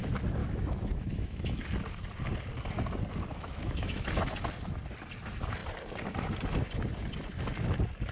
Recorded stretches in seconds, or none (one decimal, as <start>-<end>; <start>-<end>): 0.0-0.4; 1.6-3.3; 4.2-8.1